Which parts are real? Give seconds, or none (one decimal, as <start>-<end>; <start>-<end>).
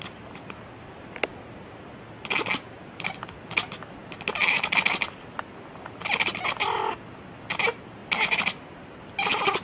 0.0-9.6